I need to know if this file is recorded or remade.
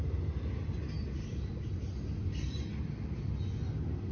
recorded